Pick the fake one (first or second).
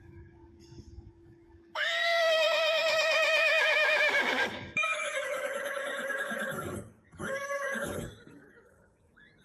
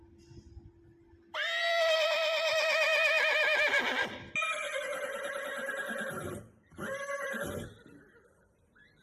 first